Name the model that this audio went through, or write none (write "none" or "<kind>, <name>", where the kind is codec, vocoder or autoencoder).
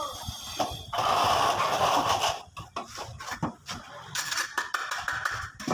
vocoder, BigVGAN v2